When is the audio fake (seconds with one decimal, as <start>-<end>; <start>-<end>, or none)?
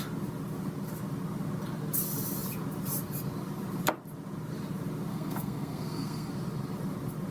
5.1-6.3